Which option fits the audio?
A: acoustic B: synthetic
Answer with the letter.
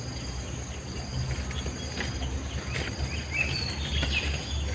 A